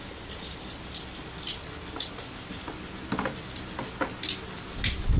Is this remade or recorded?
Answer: recorded